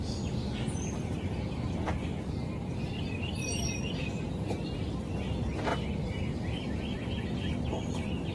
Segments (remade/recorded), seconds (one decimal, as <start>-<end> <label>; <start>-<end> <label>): 0.0-5.7 recorded; 5.7-7.1 remade; 7.1-8.3 recorded